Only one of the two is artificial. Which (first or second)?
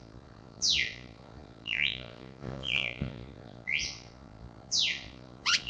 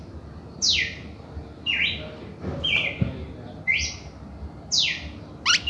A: first